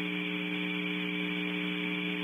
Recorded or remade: recorded